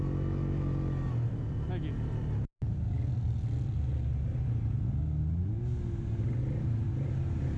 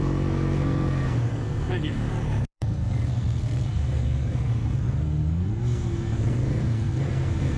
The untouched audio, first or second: first